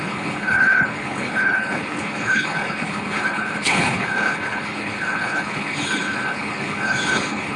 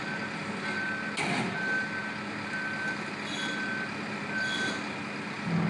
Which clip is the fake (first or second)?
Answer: first